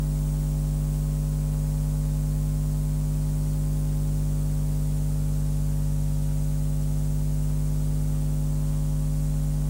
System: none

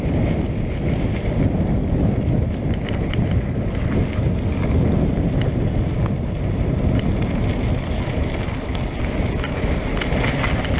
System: none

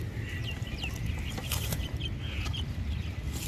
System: none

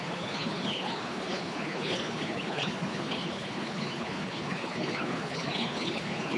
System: codec, HILCodec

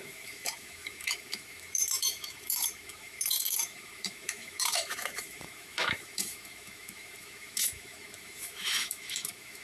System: autoencoder, DAC-VAE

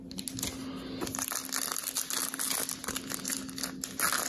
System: none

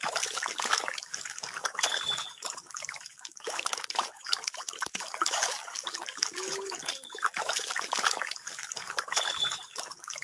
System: codec, DAC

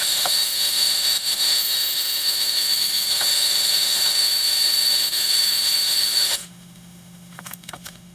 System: autoencoder, DAC-VAE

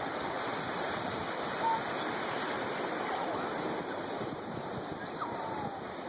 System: vocoder, BigVGAN v2